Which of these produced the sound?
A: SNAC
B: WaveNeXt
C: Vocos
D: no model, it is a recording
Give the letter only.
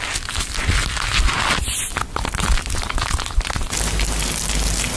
D